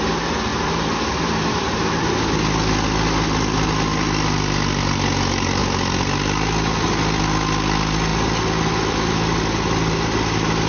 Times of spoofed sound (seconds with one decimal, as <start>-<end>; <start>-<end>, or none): 0.5-2.1